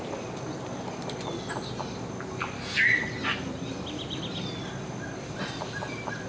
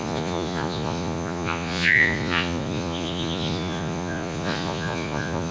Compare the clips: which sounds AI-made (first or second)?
second